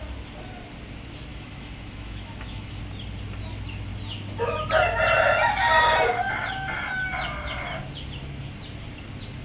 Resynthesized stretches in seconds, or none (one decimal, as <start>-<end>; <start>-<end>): 1.3-2.8